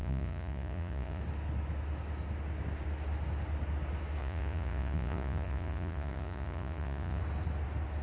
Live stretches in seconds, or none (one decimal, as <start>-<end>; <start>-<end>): 1.2-4.2; 7.2-8.0